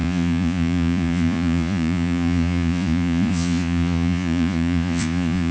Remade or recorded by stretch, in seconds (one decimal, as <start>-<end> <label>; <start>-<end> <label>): 0.0-5.5 remade

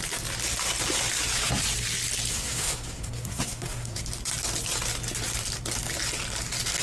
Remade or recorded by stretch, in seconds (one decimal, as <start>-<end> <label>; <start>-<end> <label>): 0.0-2.3 recorded; 2.3-4.0 remade; 4.0-6.8 recorded

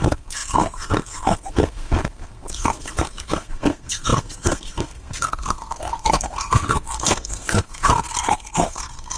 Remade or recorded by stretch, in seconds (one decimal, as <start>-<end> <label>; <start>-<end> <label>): 0.0-9.2 remade

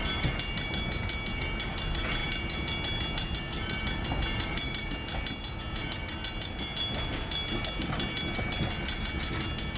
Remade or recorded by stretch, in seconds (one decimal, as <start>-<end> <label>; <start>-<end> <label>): 0.0-9.8 recorded

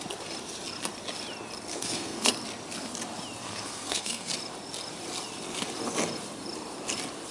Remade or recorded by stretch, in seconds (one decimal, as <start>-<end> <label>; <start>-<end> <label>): 0.0-1.7 recorded; 1.7-2.3 remade; 2.3-3.4 recorded; 3.4-4.3 remade; 4.3-7.3 recorded

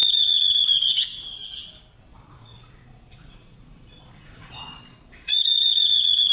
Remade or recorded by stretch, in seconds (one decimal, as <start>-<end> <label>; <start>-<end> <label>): 0.0-1.0 remade; 1.0-2.1 recorded; 2.1-6.3 remade

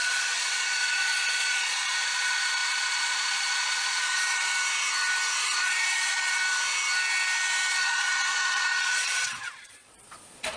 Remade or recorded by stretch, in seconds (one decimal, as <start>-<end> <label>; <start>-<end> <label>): 0.0-4.5 remade; 4.5-5.4 recorded; 5.4-6.4 remade; 6.4-7.7 recorded; 7.7-10.6 remade